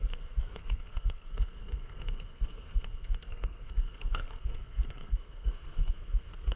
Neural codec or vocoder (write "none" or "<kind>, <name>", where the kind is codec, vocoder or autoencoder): codec, SNAC